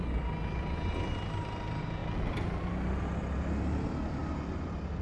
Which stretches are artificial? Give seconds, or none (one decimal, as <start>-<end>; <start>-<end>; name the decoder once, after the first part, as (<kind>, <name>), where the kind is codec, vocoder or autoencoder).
none